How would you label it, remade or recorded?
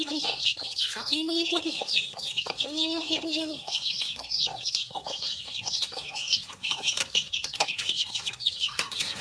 remade